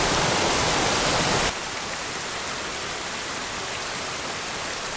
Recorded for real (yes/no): yes